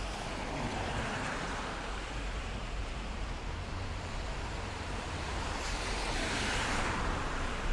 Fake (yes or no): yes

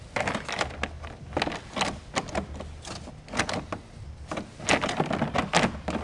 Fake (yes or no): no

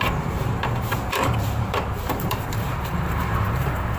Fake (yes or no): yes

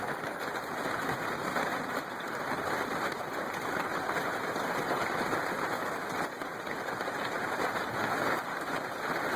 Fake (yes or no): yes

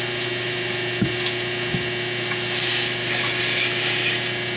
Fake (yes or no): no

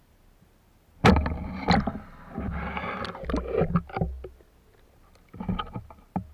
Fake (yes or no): no